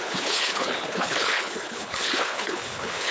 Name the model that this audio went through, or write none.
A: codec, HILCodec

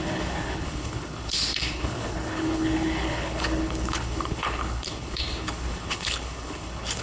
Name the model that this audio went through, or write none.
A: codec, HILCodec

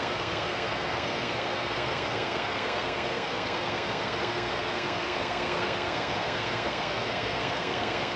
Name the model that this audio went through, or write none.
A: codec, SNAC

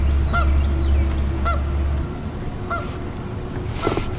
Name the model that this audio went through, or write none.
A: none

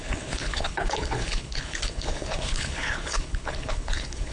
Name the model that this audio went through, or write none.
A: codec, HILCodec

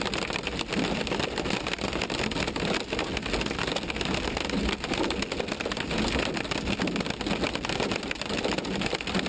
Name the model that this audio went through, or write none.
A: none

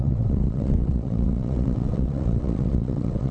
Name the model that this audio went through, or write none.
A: vocoder, WaveNeXt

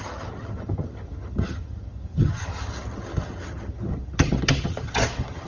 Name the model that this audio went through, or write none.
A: vocoder, HiFi-GAN